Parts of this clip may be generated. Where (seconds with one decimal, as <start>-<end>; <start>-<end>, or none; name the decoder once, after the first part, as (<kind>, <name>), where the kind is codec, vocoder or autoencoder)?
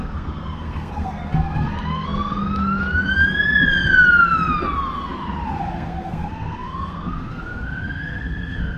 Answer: 0.0-2.4 (codec, SNAC); 5.6-8.8